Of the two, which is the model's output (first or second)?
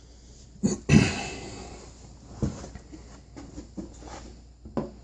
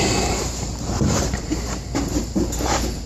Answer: second